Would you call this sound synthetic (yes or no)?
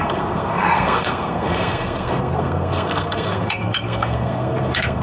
yes